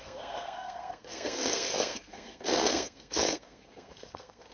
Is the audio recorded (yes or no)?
no